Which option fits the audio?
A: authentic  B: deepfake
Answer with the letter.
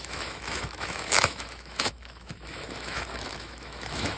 B